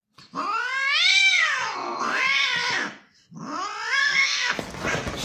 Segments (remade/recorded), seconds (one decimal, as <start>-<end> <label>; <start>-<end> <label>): 0.0-1.1 recorded; 1.1-2.2 remade; 2.2-4.0 recorded; 4.0-4.6 remade; 4.6-5.2 recorded